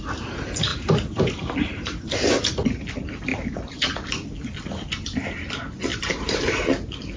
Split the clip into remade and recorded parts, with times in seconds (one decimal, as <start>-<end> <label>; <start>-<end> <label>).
0.0-0.7 recorded; 0.7-2.4 remade; 2.4-3.3 recorded; 3.3-3.9 remade; 3.9-5.9 recorded; 5.9-7.2 remade